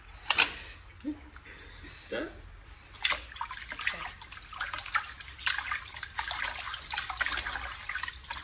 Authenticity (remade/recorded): recorded